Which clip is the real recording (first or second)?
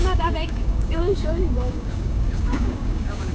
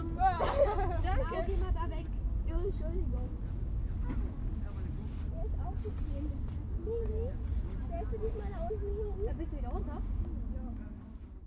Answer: second